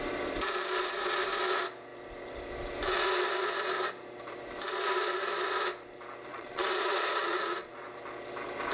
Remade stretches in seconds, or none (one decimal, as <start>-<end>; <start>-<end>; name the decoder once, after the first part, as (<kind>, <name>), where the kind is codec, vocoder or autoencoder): 6.3-7.8 (vocoder, Vocos)